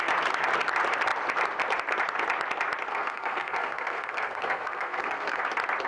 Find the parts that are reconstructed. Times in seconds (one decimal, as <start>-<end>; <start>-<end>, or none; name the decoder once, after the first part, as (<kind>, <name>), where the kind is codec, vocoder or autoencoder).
2.9-5.4 (codec, SNAC)